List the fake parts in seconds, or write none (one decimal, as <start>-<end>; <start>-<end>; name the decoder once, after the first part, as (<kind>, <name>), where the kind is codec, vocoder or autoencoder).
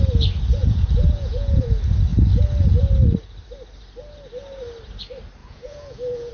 0.6-1.6 (vocoder, Vocos); 5.4-6.3